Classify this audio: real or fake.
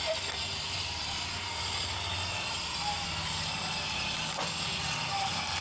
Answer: real